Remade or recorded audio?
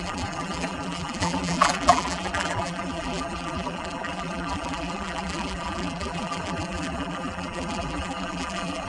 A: remade